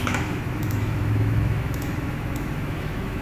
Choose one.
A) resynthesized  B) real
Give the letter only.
A